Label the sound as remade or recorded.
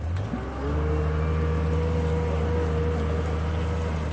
recorded